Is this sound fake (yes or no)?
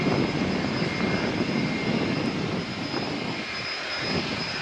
no